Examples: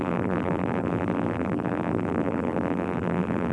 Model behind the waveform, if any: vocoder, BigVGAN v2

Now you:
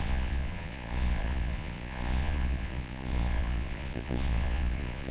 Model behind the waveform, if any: vocoder, Vocos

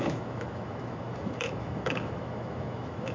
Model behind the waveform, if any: autoencoder, DAC-VAE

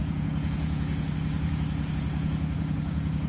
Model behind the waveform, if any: vocoder, Vocos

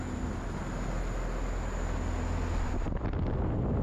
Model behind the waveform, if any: none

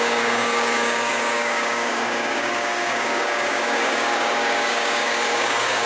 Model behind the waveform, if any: codec, DAC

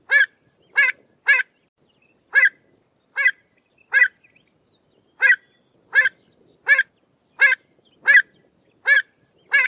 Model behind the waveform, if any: none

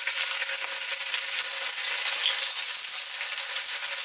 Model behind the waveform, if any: none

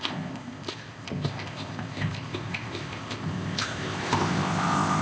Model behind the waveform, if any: codec, ZipCodec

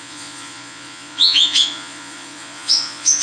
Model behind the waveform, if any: vocoder, Vocos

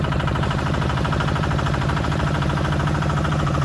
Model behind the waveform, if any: vocoder, BigVGAN v2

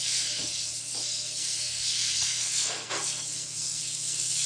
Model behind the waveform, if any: codec, SNAC